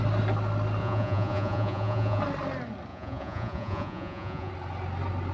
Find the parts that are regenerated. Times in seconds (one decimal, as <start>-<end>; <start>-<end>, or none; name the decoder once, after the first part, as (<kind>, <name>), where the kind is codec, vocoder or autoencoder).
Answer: 0.8-2.2 (vocoder, Vocos); 2.9-4.5

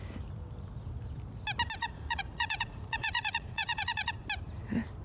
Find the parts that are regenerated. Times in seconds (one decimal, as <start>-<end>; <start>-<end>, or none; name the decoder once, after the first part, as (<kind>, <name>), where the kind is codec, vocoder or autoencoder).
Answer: 1.8-4.2 (vocoder, Vocos)

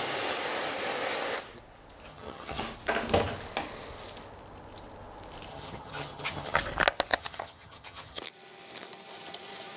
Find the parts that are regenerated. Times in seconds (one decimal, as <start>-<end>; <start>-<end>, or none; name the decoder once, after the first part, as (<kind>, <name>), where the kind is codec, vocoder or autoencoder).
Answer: 2.1-2.6 (vocoder, HiFi-GAN); 5.5-6.6; 7.1-8.2